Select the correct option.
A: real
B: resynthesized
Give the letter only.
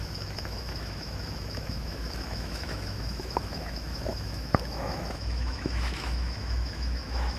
B